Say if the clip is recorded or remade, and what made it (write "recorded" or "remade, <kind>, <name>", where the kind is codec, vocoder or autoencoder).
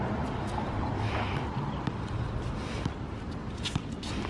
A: recorded